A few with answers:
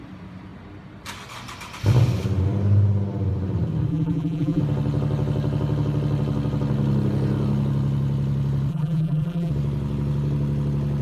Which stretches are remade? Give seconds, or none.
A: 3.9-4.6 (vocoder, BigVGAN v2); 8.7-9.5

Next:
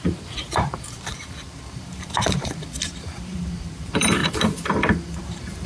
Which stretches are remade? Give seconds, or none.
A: 0.0-5.7 (vocoder, BigVGAN v2)

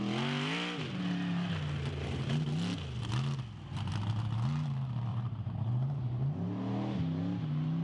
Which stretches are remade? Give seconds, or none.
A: 5.1-6.0 (vocoder, BigVGAN v2)